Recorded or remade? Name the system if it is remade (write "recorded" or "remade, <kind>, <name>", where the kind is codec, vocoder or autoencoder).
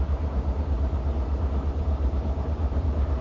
remade, vocoder, BigVGAN v2